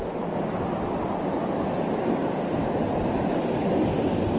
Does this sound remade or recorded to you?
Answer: recorded